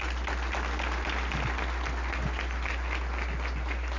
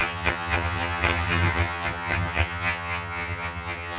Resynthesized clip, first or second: second